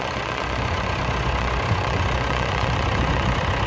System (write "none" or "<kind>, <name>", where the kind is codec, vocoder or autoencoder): vocoder, Vocos